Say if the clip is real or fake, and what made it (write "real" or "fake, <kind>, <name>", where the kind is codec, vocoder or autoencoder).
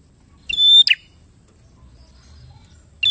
real